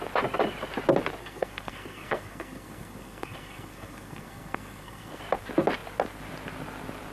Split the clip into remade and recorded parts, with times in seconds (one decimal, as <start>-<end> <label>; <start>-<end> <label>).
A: 0.0-1.2 recorded; 1.2-5.2 remade; 5.2-7.1 recorded